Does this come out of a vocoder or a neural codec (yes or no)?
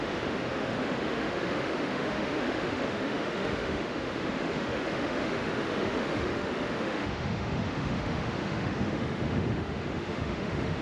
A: yes